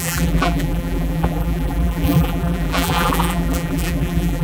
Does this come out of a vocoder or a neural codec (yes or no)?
yes